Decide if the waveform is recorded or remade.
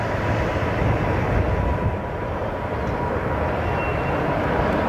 recorded